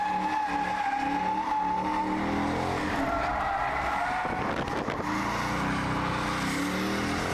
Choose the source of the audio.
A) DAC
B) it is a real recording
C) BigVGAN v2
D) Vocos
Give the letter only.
B